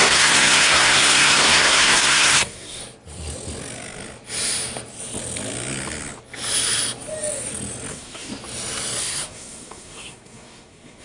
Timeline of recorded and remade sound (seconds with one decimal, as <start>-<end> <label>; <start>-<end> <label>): 0.0-2.8 remade; 2.8-7.9 recorded; 7.9-8.3 remade; 8.3-9.0 recorded; 9.0-11.0 remade